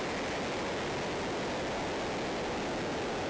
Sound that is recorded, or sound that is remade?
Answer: recorded